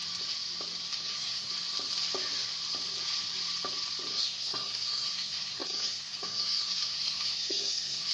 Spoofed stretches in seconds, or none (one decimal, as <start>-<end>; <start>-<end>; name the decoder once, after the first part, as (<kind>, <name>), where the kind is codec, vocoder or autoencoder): 0.9-1.5 (codec, SNAC); 4.1-8.1